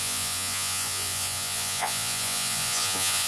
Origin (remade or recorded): remade